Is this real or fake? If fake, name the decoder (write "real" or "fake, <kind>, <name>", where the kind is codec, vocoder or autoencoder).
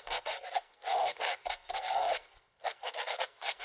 fake, codec, SNAC